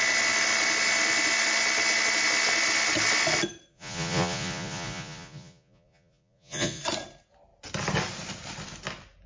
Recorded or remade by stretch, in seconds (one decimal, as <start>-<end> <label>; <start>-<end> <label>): 0.0-3.7 recorded; 3.7-6.8 remade; 6.8-9.3 recorded